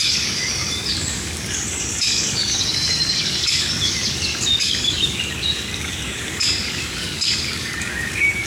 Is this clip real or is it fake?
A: fake